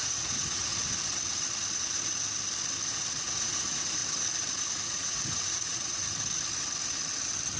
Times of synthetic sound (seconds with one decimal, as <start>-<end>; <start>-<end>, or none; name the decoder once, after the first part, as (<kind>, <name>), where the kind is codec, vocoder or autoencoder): 0.0-0.7 (vocoder, Vocos); 3.1-4.0; 4.7-6.0